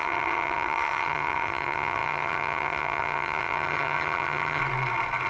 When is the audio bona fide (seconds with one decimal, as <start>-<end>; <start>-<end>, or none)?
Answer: 4.6-5.3